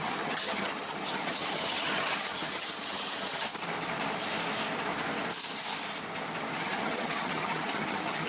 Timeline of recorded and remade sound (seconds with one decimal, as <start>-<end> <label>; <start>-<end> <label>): 0.0-3.5 remade; 3.5-6.6 recorded; 6.6-8.3 remade